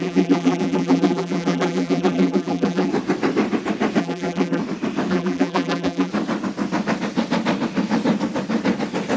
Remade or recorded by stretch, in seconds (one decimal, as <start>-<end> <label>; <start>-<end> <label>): 0.0-2.9 remade; 2.9-4.0 recorded; 4.0-4.6 remade; 4.6-5.1 recorded; 5.1-6.1 remade; 6.1-9.2 recorded